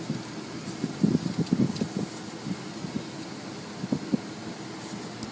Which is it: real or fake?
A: real